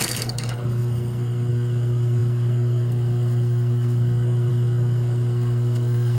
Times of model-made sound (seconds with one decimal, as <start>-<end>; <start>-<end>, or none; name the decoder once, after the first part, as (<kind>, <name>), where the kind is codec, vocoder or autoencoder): 0.0-6.2 (codec, SNAC)